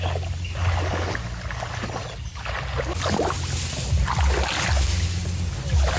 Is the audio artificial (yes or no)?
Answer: no